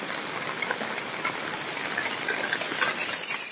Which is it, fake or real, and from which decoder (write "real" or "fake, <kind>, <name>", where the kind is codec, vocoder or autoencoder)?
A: fake, vocoder, BigVGAN v2